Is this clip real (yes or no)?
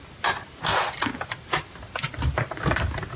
yes